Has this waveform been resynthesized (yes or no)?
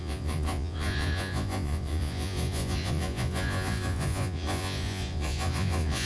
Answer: yes